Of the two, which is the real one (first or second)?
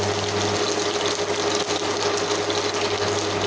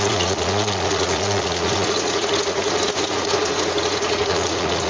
first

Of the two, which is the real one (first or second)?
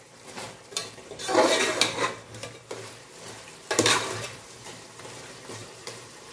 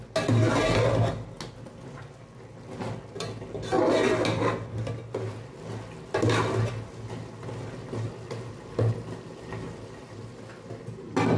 second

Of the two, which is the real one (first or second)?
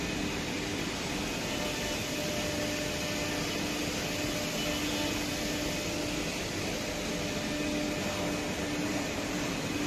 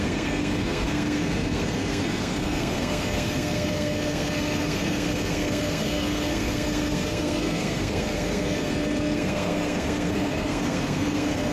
first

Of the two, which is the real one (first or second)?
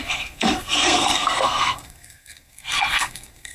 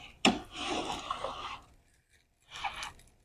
second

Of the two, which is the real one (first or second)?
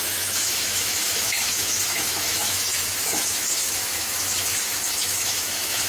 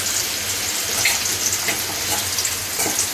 second